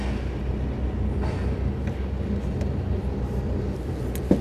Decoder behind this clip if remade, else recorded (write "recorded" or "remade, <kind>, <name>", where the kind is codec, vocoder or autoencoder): recorded